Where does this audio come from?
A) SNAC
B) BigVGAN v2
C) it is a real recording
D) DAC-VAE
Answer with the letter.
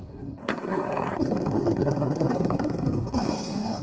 A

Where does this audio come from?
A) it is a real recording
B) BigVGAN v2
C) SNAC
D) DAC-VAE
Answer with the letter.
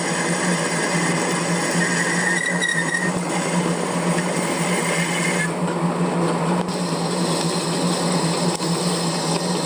A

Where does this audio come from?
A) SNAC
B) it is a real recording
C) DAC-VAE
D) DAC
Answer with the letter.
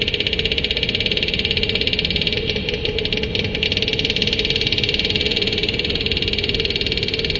B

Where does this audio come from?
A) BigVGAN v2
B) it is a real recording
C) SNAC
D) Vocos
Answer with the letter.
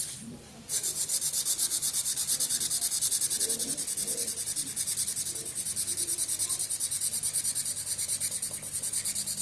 B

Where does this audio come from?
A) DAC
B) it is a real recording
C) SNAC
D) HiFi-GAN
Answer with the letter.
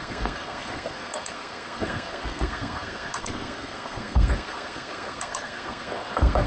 C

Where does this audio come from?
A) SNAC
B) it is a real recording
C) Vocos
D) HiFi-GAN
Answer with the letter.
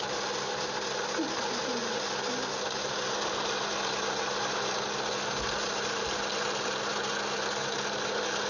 B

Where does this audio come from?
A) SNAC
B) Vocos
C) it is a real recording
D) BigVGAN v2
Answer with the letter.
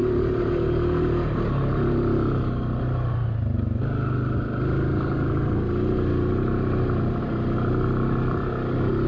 C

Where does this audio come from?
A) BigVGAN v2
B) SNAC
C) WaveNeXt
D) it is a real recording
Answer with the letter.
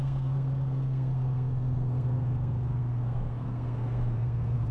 B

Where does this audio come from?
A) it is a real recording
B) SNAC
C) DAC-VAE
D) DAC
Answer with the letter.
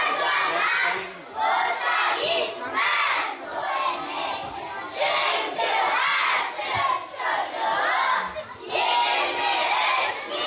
A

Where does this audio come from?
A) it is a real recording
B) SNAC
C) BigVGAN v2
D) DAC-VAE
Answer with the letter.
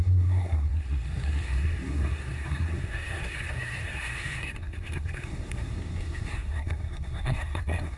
B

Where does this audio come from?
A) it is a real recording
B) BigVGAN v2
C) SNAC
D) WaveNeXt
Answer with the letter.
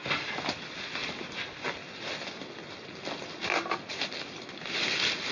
A